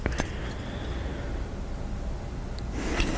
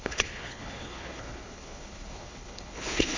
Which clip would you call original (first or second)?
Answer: first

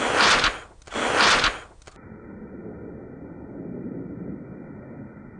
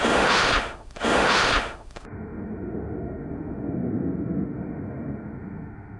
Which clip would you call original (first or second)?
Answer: first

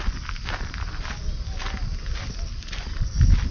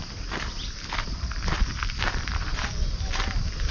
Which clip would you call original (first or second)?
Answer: first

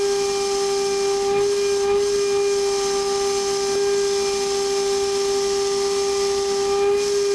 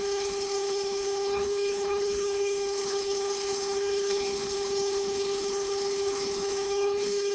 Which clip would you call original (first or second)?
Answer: first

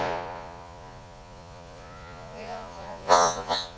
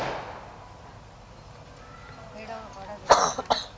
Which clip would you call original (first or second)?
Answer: second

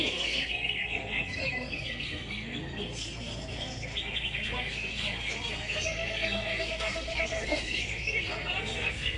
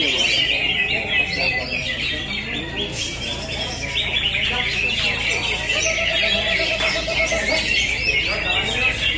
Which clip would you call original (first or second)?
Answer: second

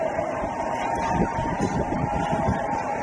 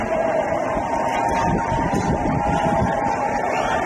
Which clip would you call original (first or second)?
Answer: second